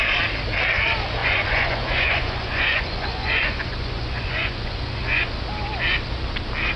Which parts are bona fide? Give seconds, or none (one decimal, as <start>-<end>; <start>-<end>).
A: 0.0-1.2; 5.3-6.8